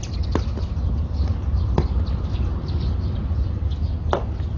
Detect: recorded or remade recorded